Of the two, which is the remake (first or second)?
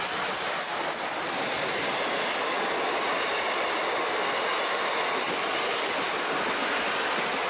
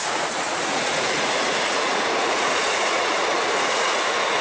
second